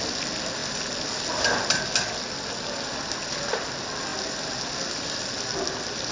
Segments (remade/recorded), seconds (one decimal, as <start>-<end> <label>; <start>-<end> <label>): 0.0-6.1 recorded